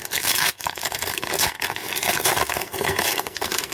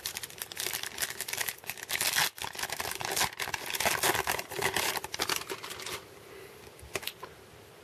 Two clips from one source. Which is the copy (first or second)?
first